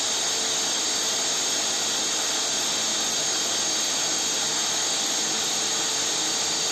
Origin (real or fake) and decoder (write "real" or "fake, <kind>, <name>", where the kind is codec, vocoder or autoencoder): real